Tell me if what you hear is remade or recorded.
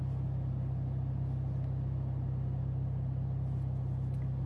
recorded